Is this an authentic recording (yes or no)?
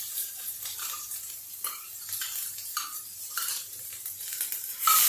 no